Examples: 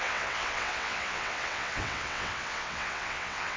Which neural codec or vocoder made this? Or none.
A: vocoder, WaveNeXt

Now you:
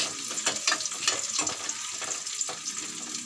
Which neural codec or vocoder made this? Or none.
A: none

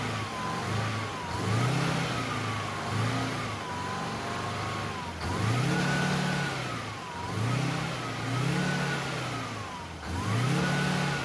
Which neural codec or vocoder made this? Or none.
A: none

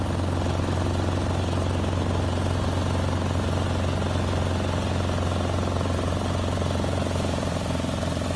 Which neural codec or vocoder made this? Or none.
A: none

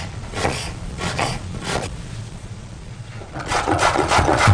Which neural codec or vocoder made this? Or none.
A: vocoder, Vocos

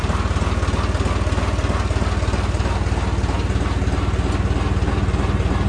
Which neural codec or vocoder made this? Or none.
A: none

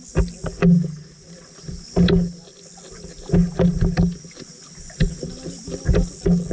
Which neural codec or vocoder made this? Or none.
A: none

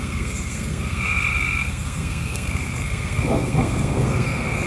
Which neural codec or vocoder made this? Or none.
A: codec, SNAC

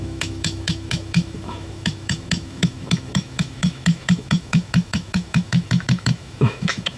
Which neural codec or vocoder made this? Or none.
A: autoencoder, DAC-VAE